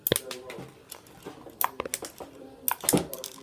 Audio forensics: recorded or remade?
recorded